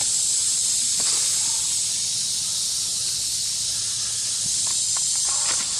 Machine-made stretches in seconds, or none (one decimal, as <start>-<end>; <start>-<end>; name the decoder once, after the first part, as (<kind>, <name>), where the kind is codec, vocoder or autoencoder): none